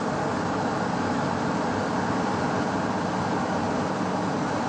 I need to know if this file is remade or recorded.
remade